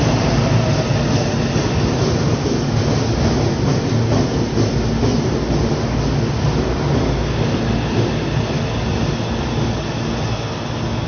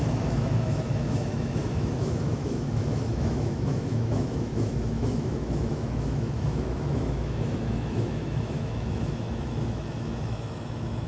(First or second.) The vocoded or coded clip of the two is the second